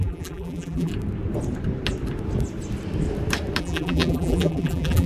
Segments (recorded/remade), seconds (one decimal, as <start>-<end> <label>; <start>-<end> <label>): 0.0-0.9 remade; 0.9-3.6 recorded; 3.6-5.1 remade